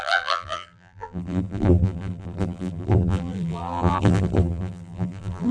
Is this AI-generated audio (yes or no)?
yes